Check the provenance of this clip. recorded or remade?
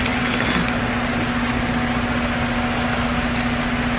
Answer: recorded